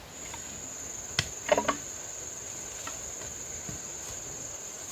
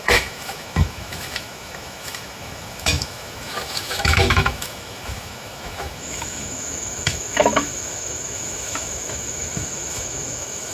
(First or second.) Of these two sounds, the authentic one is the first